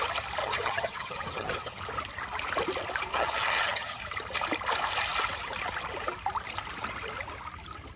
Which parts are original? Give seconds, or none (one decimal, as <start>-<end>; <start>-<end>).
0.0-0.4; 1.8-3.1; 4.0-8.0